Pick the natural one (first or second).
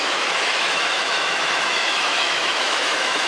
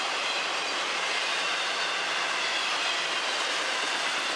second